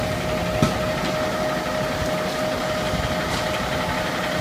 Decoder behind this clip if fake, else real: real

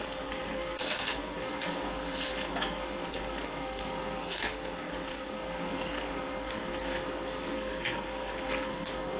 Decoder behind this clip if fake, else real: fake, codec, SNAC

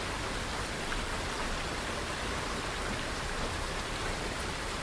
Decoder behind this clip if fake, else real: fake, vocoder, BigVGAN v2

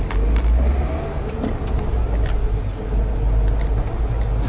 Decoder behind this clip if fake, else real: real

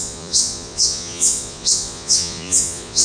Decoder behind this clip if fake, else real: fake, vocoder, Vocos